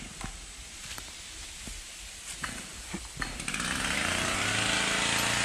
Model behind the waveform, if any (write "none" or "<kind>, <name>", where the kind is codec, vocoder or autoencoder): none